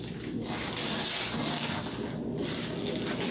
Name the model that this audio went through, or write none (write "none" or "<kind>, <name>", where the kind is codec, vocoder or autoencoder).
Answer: none